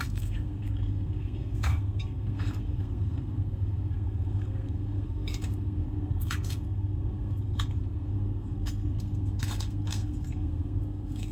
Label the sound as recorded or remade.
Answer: remade